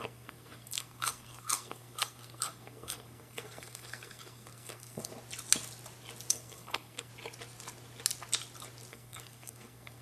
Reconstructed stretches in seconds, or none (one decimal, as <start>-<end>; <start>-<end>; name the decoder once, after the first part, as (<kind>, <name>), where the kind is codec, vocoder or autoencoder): 0.0-5.1 (codec, SNAC); 6.3-7.1; 8.9-10.0